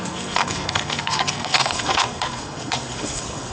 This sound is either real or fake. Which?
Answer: fake